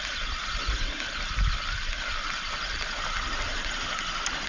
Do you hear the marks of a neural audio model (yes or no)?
no